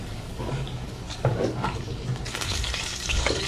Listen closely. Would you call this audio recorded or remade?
remade